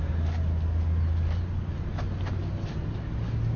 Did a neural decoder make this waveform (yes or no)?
no